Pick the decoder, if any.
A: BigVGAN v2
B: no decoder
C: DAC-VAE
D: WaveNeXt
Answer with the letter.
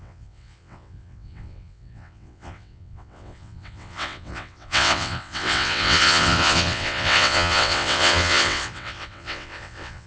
D